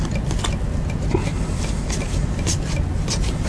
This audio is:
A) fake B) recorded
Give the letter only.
B